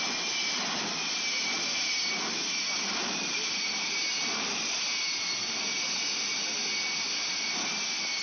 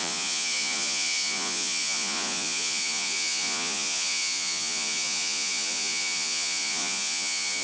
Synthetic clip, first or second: second